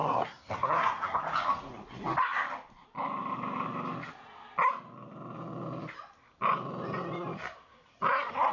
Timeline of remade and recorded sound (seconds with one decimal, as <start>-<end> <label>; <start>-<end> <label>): 0.0-1.2 remade; 1.2-8.5 recorded